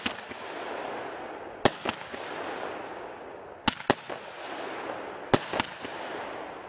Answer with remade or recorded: recorded